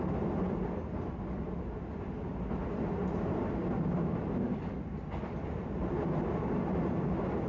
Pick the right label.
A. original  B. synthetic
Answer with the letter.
A